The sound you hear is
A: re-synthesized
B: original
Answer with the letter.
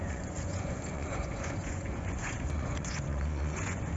A